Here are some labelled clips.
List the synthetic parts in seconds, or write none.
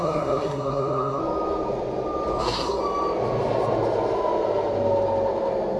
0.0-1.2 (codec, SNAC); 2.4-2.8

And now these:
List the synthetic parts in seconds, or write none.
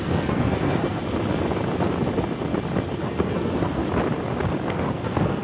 0.0-1.0 (codec, SNAC); 3.0-3.8; 4.7-5.4